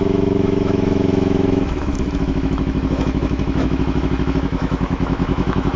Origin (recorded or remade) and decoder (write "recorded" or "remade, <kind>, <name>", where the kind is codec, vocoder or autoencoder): remade, autoencoder, DAC-VAE